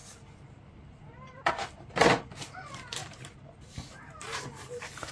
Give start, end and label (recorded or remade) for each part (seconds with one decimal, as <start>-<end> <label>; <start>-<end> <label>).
0.0-1.5 remade; 1.5-3.0 recorded; 3.0-4.0 remade; 4.0-5.1 recorded